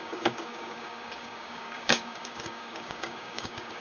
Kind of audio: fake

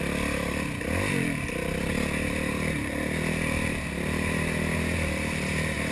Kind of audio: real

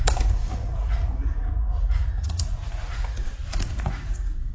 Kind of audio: fake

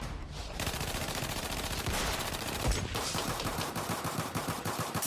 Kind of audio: fake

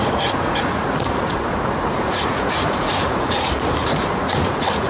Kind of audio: fake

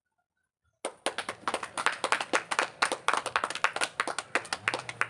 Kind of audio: real